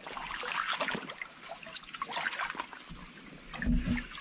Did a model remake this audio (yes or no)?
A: no